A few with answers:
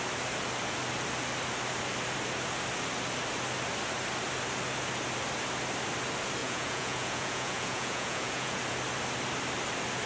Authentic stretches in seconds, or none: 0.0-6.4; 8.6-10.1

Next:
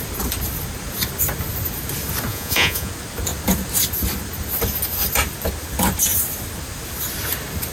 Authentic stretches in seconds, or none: 0.0-2.3; 2.9-7.7

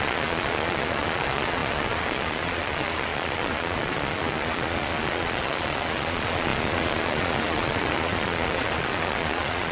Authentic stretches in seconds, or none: none

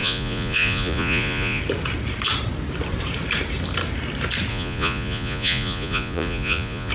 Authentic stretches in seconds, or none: 1.6-4.5

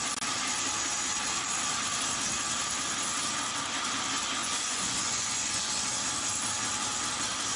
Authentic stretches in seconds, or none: 0.0-4.4; 5.7-7.6

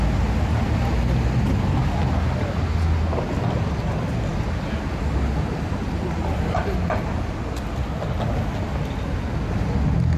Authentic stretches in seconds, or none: 0.0-10.2